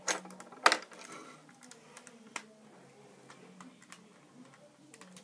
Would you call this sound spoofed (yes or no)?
no